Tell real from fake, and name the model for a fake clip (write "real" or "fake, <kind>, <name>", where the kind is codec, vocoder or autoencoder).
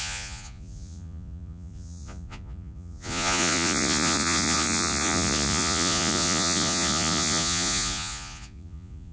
fake, vocoder, Vocos